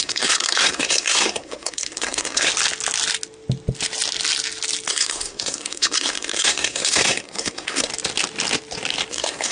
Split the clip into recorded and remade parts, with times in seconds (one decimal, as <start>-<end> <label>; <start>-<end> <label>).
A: 0.0-2.5 remade; 2.5-4.9 recorded; 4.9-7.9 remade; 7.9-9.1 recorded; 9.1-9.5 remade